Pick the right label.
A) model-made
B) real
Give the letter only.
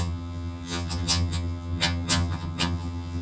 A